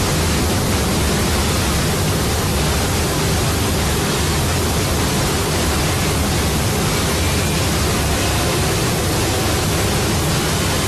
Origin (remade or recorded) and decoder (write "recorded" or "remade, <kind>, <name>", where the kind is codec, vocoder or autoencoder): recorded